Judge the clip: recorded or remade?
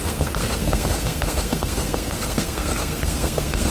remade